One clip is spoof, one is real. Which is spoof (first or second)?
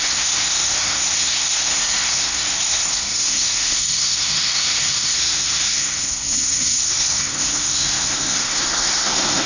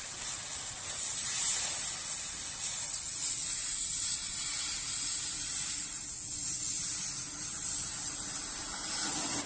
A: first